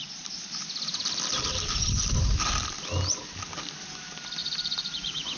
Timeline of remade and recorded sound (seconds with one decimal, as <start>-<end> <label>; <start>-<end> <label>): 0.0-4.4 recorded; 4.4-5.4 remade